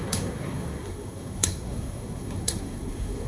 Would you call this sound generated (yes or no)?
yes